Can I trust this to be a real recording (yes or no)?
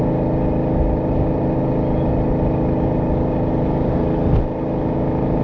yes